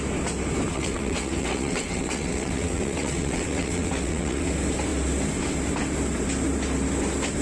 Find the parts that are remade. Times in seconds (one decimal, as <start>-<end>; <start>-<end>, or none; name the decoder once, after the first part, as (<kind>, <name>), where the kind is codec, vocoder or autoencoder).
0.7-4.5 (vocoder, WaveNeXt)